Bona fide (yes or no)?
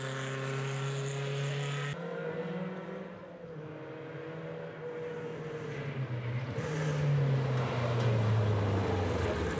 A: yes